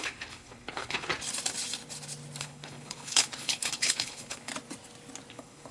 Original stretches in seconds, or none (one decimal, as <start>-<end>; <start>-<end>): 1.1-2.4; 4.5-5.3